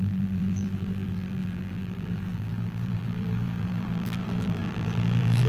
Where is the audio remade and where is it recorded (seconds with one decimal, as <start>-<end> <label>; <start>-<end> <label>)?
0.0-5.5 remade